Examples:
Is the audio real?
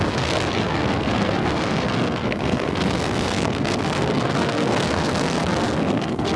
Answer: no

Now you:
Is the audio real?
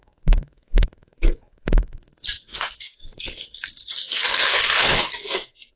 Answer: no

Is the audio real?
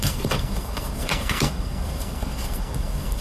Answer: no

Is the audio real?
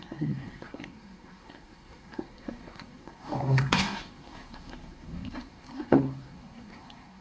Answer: no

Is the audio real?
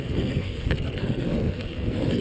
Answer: no